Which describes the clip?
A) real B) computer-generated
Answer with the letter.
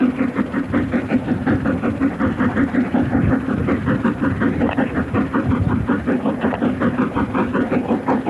B